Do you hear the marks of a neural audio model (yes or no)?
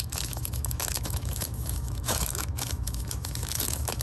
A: yes